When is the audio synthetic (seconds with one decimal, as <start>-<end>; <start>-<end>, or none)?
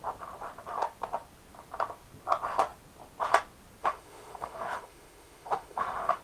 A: 3.8-6.2